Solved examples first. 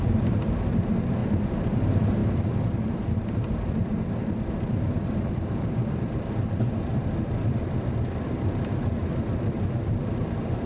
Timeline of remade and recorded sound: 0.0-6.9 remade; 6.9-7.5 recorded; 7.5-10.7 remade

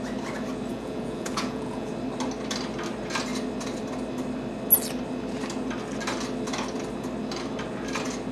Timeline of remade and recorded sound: 0.0-0.7 recorded; 0.7-1.9 remade; 1.9-8.3 recorded

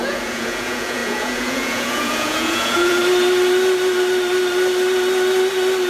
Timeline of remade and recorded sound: 0.0-3.0 remade; 3.0-5.9 recorded

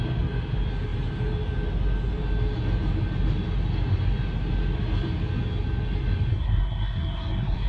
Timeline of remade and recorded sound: 0.0-6.3 recorded; 6.3-7.7 remade

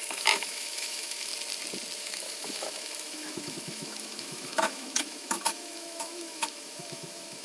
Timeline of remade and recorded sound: 0.0-1.3 remade; 1.3-2.0 recorded; 2.0-7.4 remade

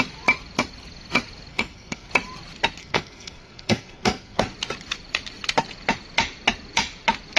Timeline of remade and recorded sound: 0.0-1.5 recorded; 1.5-2.1 remade; 2.1-2.8 recorded; 2.8-4.4 remade; 4.4-7.4 recorded

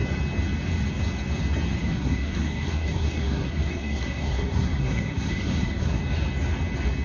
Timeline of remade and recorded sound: 0.0-1.8 recorded; 1.8-6.0 remade; 6.0-7.0 recorded

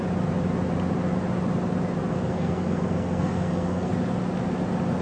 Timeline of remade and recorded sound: 0.0-2.1 recorded; 2.1-3.9 remade; 3.9-5.0 recorded